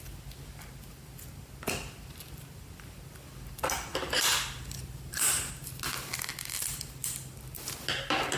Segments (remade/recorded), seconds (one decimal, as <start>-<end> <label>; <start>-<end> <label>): 0.0-3.9 recorded; 3.9-5.2 remade; 5.2-8.4 recorded